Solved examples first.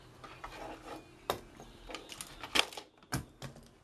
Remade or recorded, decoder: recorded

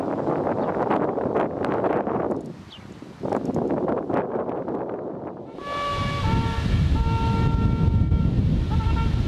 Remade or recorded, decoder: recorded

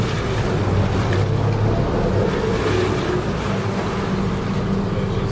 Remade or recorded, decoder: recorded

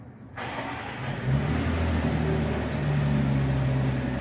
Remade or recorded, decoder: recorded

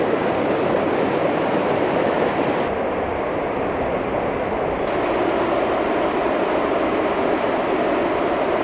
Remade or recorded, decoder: recorded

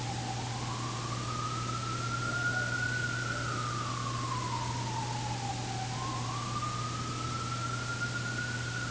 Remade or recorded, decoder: recorded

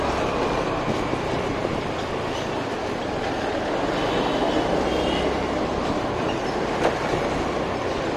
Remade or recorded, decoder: recorded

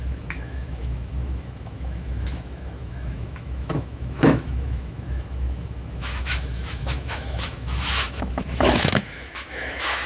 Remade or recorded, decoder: remade, autoencoder, DAC-VAE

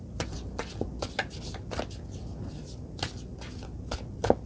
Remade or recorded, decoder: recorded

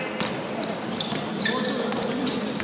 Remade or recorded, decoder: recorded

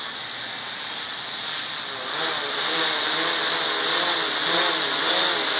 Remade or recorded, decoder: recorded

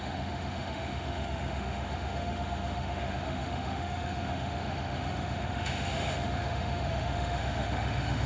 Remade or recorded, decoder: remade, autoencoder, DAC-VAE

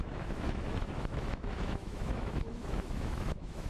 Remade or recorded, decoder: remade, autoencoder, DAC-VAE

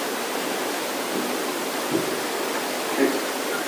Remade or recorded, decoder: recorded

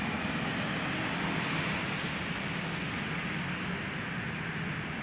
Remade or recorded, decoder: recorded